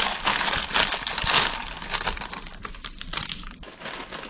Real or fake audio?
real